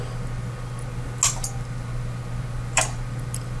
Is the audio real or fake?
real